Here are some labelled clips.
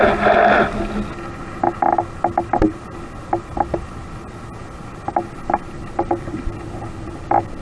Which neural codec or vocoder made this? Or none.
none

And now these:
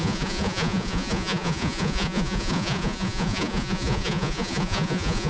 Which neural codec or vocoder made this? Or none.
vocoder, Vocos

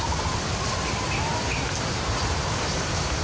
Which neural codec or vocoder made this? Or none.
vocoder, BigVGAN v2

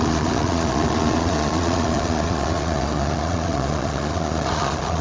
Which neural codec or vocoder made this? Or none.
vocoder, Vocos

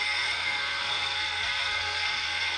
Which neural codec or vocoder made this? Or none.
codec, SNAC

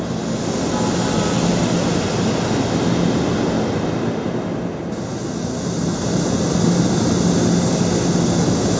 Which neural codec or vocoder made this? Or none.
none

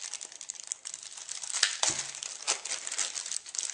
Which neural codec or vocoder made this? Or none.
none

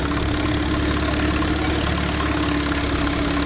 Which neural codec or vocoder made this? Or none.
none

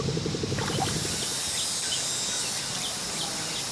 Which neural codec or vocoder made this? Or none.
none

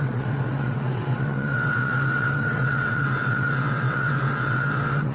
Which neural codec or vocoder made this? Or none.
vocoder, WaveNeXt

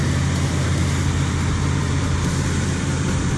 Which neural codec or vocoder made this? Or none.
none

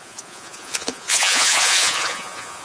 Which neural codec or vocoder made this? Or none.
vocoder, Vocos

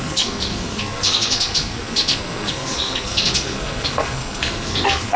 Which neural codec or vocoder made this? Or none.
codec, SNAC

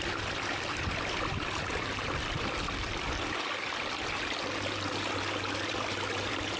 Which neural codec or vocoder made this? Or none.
none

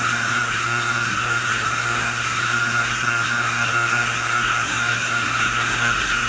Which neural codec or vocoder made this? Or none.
codec, SNAC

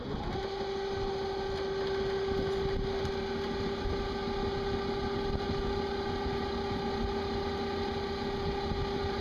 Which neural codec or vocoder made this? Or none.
none